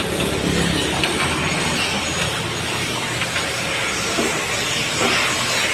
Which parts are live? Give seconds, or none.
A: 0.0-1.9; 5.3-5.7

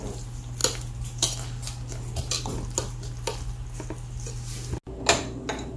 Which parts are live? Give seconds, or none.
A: 0.0-5.8

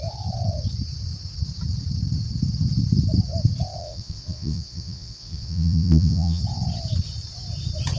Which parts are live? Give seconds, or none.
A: 0.0-3.8; 6.4-8.0

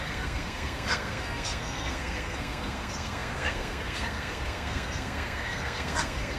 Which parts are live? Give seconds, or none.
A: none

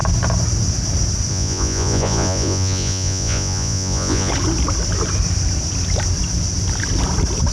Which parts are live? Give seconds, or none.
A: 0.0-1.3; 4.3-7.5

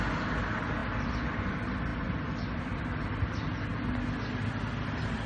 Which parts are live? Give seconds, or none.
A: 0.0-5.3

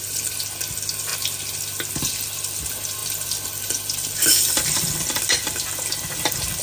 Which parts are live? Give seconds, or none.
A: 0.0-6.6